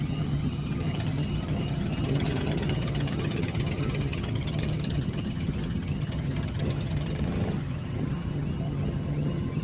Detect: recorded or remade remade